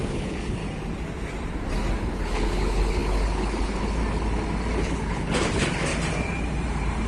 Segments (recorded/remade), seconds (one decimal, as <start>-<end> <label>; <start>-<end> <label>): 0.0-0.6 remade; 0.6-2.0 recorded; 2.0-4.0 remade; 4.0-4.8 recorded; 4.8-5.9 remade; 5.9-7.1 recorded